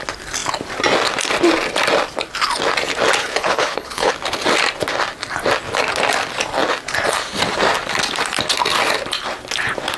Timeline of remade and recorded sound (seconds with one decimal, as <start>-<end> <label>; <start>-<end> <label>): 0.0-3.2 recorded; 3.2-4.1 remade; 4.1-10.0 recorded